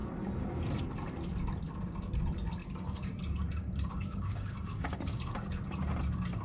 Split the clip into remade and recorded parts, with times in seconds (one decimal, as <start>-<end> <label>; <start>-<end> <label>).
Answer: 0.0-2.6 recorded; 2.6-3.2 remade; 3.2-3.6 recorded; 3.6-5.2 remade; 5.2-6.4 recorded